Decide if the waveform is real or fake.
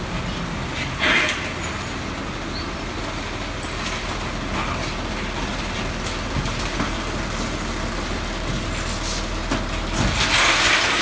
real